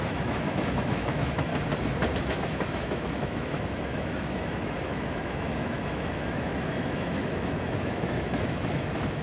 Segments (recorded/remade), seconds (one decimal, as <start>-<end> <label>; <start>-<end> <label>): 0.0-1.5 remade; 1.5-2.2 recorded; 2.2-9.2 remade